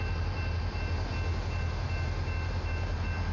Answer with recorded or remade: recorded